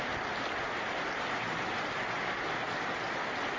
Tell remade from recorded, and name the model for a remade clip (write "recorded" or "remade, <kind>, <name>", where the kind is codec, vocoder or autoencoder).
recorded